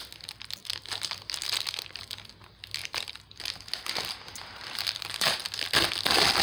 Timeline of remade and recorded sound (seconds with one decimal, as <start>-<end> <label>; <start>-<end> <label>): 0.0-2.8 recorded; 2.8-3.4 remade; 3.4-4.3 recorded; 4.3-5.4 remade; 5.4-6.4 recorded